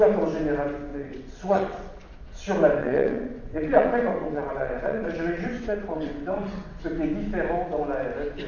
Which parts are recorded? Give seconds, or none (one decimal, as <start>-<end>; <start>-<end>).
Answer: 0.0-0.9; 2.0-2.8; 6.8-8.5